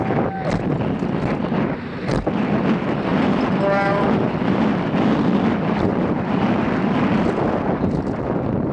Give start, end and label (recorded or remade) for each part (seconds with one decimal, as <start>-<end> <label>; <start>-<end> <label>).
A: 0.0-3.1 recorded; 3.1-4.6 remade; 4.6-5.9 recorded; 5.9-8.2 remade; 8.2-8.7 recorded

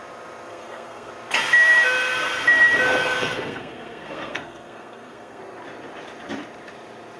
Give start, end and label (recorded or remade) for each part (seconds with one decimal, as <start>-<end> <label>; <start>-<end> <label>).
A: 0.0-0.5 recorded; 0.5-1.1 remade; 1.1-3.0 recorded; 3.0-5.4 remade; 5.4-7.2 recorded

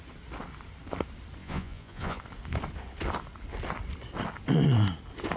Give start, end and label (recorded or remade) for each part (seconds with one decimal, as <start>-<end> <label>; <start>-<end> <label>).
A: 0.0-1.4 recorded; 1.4-2.2 remade; 2.2-5.4 recorded